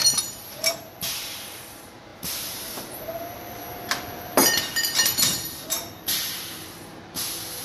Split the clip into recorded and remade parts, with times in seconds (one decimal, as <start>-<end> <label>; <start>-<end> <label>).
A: 0.0-7.6 remade